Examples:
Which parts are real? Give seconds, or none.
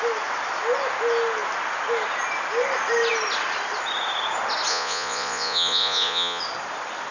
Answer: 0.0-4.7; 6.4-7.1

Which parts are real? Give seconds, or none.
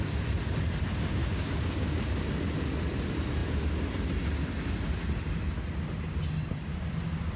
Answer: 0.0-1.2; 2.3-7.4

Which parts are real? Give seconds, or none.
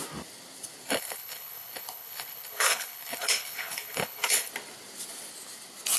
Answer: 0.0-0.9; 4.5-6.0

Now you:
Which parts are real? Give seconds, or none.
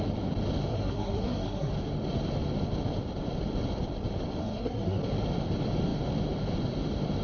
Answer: 0.0-0.7; 1.7-4.4; 5.0-7.2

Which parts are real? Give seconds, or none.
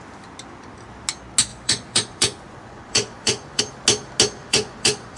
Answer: 0.0-1.5; 3.6-4.4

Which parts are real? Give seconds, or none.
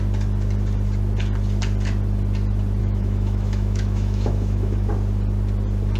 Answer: 0.0-2.8; 4.9-6.0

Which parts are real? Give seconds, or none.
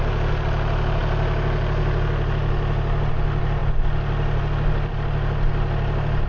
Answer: 0.0-6.3